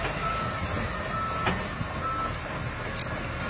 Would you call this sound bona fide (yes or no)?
yes